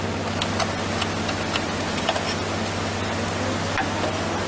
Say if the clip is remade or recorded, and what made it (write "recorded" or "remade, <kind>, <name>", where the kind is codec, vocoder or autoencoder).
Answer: recorded